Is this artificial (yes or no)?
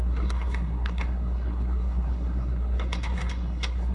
yes